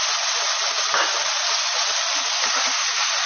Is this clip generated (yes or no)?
no